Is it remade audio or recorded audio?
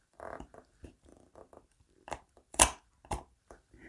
remade